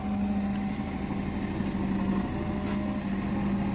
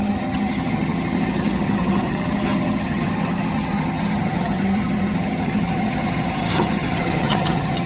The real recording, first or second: first